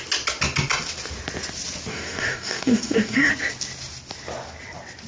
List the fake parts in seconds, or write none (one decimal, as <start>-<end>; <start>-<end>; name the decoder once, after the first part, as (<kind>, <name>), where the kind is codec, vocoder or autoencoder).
1.9-3.3 (codec, DAC)